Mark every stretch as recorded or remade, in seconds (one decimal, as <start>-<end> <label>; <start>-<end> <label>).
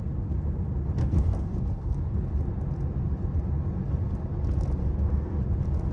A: 0.0-1.0 recorded; 1.0-2.2 remade; 2.2-4.8 recorded; 4.8-5.4 remade; 5.4-5.9 recorded